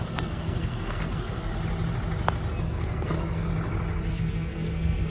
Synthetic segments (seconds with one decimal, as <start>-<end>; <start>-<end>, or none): 0.0-1.5; 2.6-3.5; 4.1-5.1